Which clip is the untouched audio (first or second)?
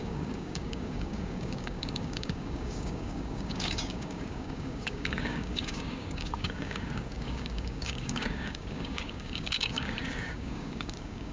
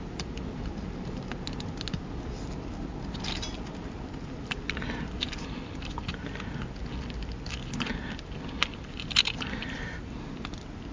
second